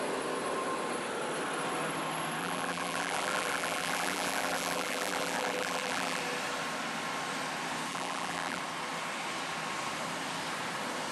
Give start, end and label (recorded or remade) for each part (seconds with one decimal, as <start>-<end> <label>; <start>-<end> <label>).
0.0-2.4 recorded; 2.4-6.2 remade; 6.2-7.9 recorded; 7.9-8.6 remade; 8.6-11.1 recorded